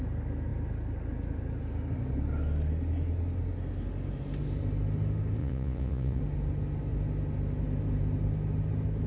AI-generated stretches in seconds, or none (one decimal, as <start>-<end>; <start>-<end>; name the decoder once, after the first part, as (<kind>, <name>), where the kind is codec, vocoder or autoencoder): 5.4-6.2 (vocoder, Vocos)